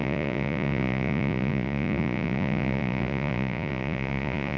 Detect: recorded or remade remade